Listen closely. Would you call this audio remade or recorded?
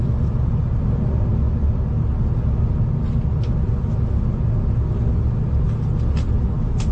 recorded